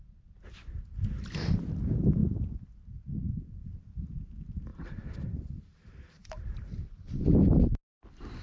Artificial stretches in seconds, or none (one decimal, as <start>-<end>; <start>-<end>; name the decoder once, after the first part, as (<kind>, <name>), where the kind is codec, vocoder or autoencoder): 4.7-7.1 (vocoder, BigVGAN v2)

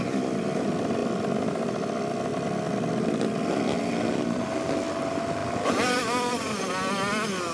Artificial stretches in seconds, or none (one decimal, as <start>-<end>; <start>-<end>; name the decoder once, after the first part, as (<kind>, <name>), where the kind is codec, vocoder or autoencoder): none

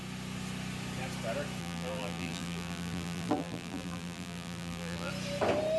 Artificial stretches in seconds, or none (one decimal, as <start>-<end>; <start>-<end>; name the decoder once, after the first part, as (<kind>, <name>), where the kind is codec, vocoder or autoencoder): 1.6-5.1 (vocoder, BigVGAN v2)